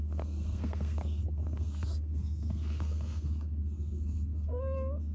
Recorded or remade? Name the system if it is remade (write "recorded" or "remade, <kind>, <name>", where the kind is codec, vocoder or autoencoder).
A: remade, codec, SNAC